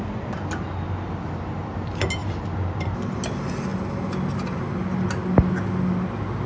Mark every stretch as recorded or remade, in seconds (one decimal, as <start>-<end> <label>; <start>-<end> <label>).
0.0-2.2 recorded; 2.2-3.0 remade; 3.0-6.5 recorded